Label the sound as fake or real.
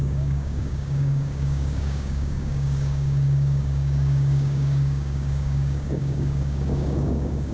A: fake